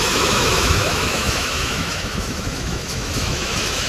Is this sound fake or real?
fake